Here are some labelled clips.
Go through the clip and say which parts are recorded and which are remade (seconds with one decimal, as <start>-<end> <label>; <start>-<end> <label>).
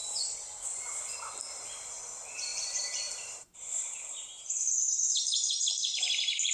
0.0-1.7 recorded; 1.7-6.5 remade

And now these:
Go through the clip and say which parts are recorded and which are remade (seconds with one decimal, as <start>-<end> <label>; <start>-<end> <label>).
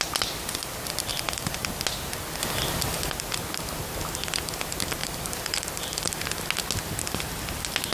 0.0-1.1 recorded; 1.1-1.7 remade; 1.7-5.0 recorded; 5.0-6.0 remade; 6.0-7.9 recorded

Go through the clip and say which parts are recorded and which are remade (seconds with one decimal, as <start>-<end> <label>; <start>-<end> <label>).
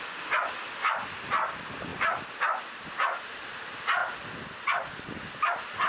0.0-1.9 recorded; 1.9-2.4 remade; 2.4-5.9 recorded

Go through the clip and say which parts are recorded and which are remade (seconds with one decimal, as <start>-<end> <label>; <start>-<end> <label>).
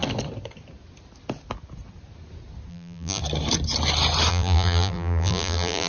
0.0-2.7 recorded; 2.7-3.2 remade; 3.2-4.3 recorded; 4.3-5.9 remade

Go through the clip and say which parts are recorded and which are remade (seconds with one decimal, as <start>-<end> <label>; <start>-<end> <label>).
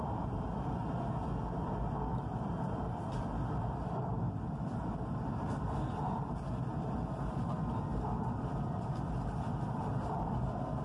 0.0-0.8 remade; 0.8-1.4 recorded; 1.4-4.1 remade; 4.1-5.4 recorded; 5.4-10.8 remade